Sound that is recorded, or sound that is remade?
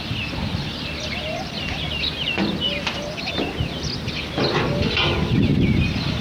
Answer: recorded